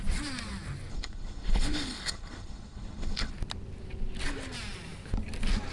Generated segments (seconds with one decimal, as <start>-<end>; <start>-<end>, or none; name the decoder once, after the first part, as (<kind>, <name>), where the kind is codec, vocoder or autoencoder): 0.9-3.3 (codec, HILCodec)

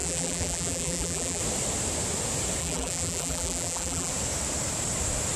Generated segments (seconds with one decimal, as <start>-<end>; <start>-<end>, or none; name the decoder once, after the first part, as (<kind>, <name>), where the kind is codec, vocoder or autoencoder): 0.0-1.4 (vocoder, BigVGAN v2); 2.6-4.1